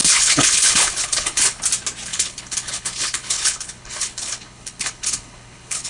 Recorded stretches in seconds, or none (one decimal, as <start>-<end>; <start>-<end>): 1.6-2.1